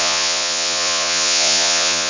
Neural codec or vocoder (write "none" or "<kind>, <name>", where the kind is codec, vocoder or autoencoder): vocoder, Vocos